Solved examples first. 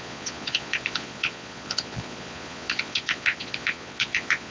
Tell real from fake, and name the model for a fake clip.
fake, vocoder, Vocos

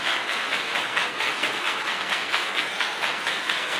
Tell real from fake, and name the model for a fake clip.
fake, codec, SNAC